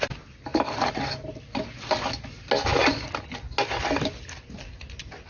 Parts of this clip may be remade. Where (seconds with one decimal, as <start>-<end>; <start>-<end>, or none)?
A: none